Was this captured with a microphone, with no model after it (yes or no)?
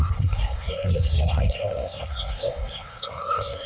no